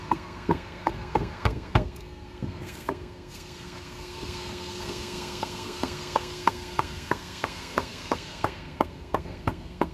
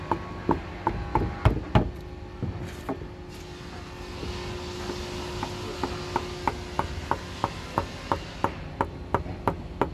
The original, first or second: second